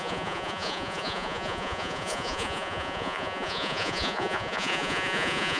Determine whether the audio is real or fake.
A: fake